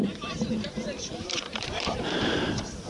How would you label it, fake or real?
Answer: fake